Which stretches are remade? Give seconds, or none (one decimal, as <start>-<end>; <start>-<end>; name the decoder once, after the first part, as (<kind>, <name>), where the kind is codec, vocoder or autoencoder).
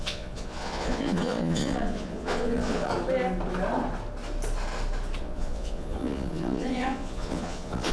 0.0-2.9 (vocoder, Vocos); 5.2-7.9